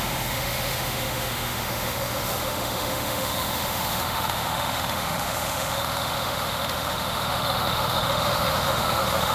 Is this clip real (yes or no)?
no